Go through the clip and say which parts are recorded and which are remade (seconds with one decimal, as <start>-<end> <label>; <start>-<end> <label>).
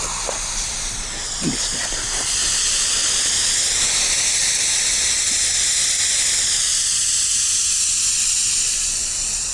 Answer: 0.0-9.5 recorded